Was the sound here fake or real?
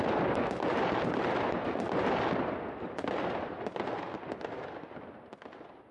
real